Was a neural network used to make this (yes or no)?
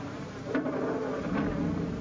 no